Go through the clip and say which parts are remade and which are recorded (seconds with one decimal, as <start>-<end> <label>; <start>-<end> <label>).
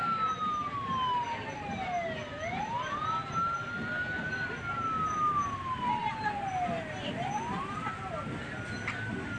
0.0-9.4 recorded